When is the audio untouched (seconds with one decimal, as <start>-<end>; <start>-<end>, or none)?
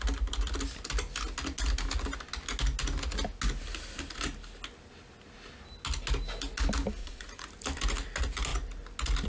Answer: 0.0-7.0; 7.5-9.3